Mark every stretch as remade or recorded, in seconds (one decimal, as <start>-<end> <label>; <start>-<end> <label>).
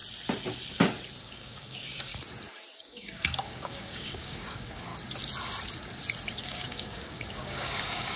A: 0.0-1.2 recorded; 1.2-2.1 remade; 2.1-2.8 recorded; 2.8-4.9 remade; 4.9-6.4 recorded; 6.4-8.2 remade